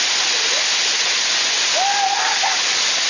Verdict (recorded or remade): recorded